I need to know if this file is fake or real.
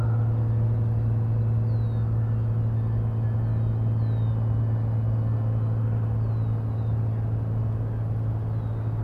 real